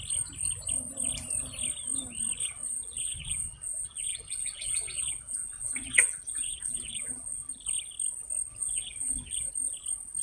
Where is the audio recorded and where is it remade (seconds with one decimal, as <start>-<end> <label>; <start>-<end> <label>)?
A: 0.0-2.4 recorded; 2.4-7.5 remade; 7.5-8.5 recorded; 8.5-9.5 remade; 9.5-10.2 recorded